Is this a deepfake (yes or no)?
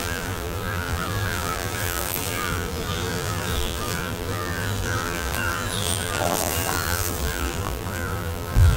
yes